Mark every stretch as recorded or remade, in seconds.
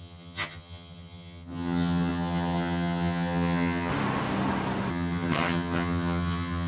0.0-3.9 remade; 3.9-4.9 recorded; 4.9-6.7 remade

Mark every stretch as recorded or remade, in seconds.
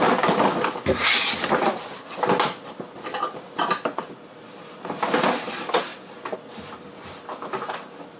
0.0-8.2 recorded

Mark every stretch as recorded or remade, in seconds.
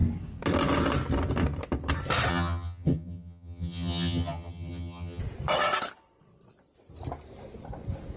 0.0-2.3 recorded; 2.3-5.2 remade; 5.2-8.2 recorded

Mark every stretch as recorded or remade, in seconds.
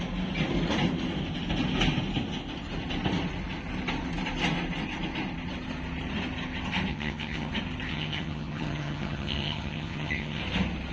0.0-6.9 recorded; 6.9-7.5 remade; 7.5-7.9 recorded; 7.9-10.4 remade; 10.4-10.9 recorded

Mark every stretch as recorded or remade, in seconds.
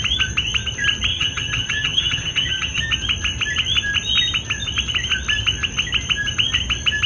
0.0-1.1 recorded; 1.1-2.8 remade; 2.8-7.1 recorded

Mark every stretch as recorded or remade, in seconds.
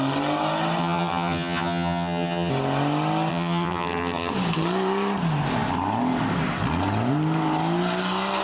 0.0-0.8 recorded; 0.8-2.5 remade; 2.5-3.3 recorded; 3.3-4.3 remade; 4.3-8.4 recorded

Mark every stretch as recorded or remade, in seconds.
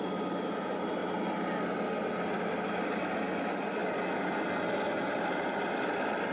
0.0-6.3 recorded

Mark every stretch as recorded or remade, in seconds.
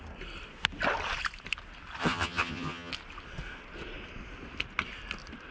0.0-2.0 recorded; 2.0-2.9 remade; 2.9-5.5 recorded